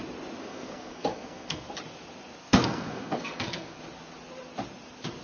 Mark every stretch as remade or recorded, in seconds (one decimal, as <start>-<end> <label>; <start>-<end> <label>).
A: 0.0-0.4 recorded; 0.4-1.7 remade; 1.7-2.4 recorded; 2.4-3.8 remade; 3.8-5.2 recorded